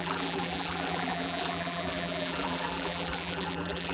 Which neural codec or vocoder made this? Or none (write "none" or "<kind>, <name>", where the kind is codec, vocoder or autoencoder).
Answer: vocoder, BigVGAN v2